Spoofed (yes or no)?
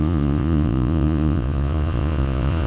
yes